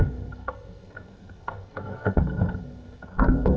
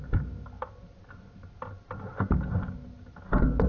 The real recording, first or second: second